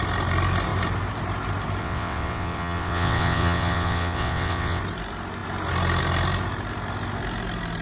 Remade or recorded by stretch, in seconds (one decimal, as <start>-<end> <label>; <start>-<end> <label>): 0.0-1.8 recorded; 1.8-4.8 remade; 4.8-7.8 recorded